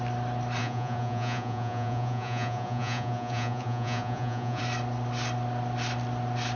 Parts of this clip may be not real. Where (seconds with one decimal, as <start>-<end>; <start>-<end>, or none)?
0.6-4.6